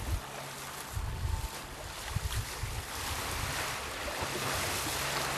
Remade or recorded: recorded